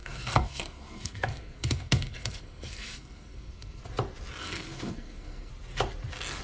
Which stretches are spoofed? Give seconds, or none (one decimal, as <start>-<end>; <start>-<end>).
0.0-3.8; 4.4-5.5